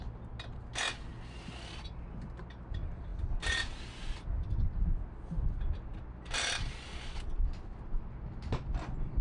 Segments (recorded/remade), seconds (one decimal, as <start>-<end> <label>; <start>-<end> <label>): 0.0-9.2 recorded